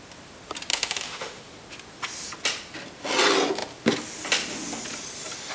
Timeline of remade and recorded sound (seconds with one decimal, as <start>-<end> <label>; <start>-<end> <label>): 0.0-0.7 recorded; 0.7-1.4 remade; 1.4-5.5 recorded